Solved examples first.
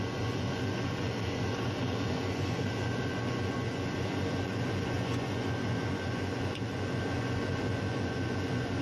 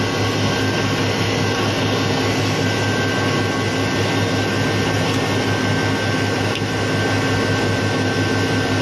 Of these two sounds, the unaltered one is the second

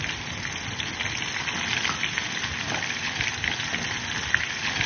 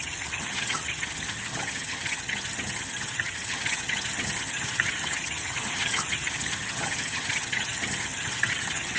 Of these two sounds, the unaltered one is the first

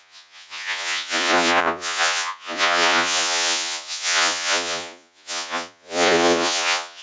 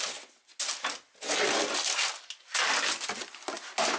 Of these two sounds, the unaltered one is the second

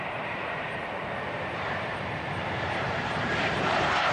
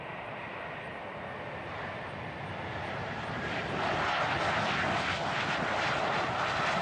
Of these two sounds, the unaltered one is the second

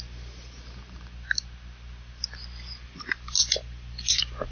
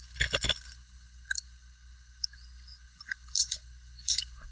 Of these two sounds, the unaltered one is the first